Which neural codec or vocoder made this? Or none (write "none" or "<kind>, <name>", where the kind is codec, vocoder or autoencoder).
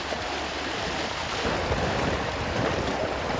none